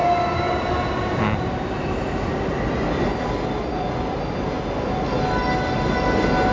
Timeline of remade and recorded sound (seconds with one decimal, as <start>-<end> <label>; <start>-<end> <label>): 0.0-6.5 recorded